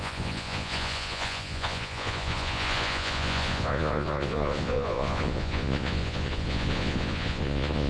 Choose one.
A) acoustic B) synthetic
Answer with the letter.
B